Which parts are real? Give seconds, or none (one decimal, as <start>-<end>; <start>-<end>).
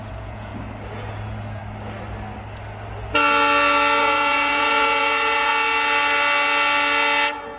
0.5-1.1; 1.6-4.0; 5.5-7.6